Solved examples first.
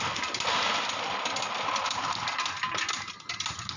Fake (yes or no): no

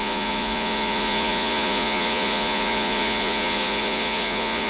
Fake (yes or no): yes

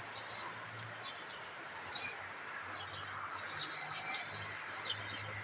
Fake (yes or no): no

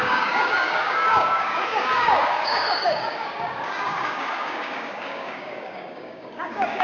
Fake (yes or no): yes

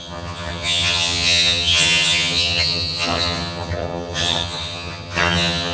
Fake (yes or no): yes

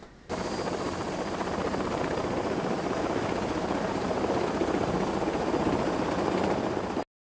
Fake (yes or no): no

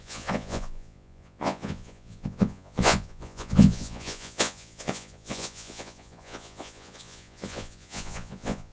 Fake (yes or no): yes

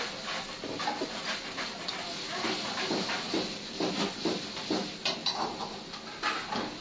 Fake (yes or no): no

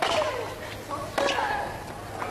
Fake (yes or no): no